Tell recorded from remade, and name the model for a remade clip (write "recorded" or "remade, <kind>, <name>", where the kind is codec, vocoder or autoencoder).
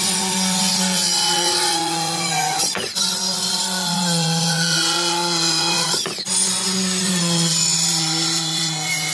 remade, vocoder, Vocos